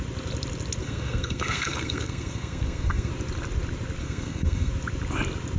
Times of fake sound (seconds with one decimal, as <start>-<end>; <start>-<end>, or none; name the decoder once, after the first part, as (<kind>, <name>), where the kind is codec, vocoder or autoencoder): 0.8-3.1 (codec, SNAC); 4.0-4.7